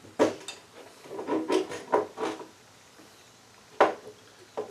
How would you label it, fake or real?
real